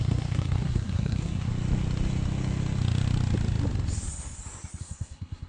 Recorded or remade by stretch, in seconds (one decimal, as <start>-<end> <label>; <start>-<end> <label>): 0.0-1.5 remade; 1.5-4.8 recorded; 4.8-5.5 remade

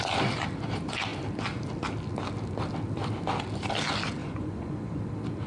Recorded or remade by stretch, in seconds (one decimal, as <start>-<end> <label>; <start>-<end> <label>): 0.0-4.2 recorded; 4.2-5.0 remade; 5.0-5.5 recorded